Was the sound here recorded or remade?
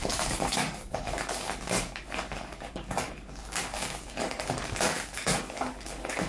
remade